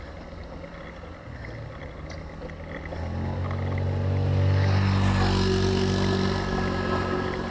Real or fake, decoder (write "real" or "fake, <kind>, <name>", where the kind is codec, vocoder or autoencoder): real